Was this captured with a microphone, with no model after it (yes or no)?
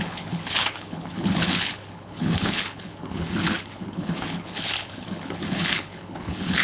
no